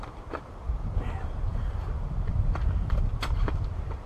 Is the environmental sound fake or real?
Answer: fake